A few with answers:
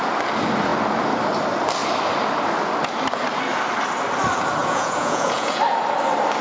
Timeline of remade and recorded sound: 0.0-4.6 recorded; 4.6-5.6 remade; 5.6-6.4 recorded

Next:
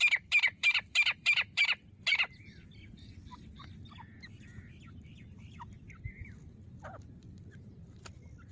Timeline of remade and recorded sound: 0.0-0.5 recorded; 0.5-2.8 remade; 2.8-8.5 recorded